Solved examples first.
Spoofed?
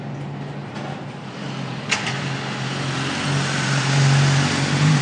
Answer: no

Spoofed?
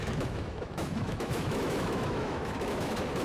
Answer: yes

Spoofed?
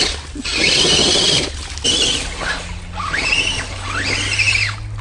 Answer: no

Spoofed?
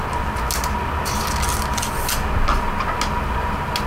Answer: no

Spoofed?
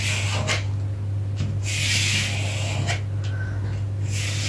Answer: no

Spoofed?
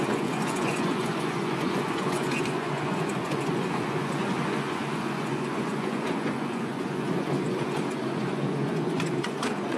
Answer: yes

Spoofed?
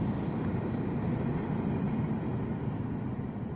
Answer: no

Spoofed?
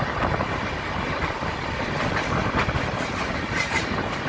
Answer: no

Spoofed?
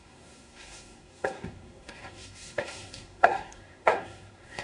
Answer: yes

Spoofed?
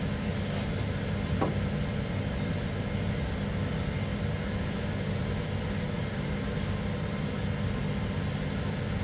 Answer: no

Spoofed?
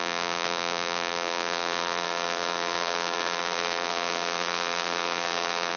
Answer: yes